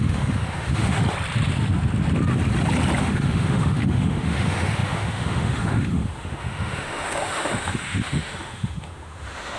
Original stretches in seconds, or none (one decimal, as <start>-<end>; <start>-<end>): 1.0-3.0